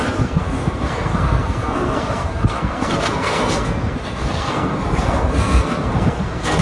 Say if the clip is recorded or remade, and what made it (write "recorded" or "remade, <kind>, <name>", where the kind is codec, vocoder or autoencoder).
remade, codec, SNAC